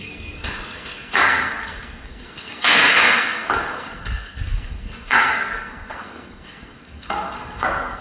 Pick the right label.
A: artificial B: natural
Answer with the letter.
A